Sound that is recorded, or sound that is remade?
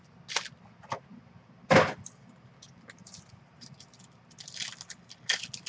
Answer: recorded